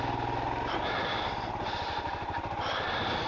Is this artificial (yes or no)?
no